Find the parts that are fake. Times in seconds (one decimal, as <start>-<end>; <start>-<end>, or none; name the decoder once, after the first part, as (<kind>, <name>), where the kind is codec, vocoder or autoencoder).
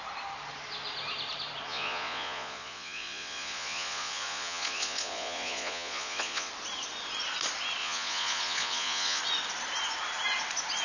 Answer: 1.7-6.5 (vocoder, Vocos); 7.8-9.2